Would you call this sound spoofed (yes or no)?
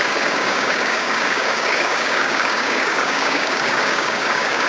yes